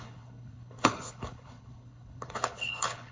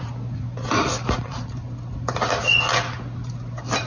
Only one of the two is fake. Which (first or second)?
first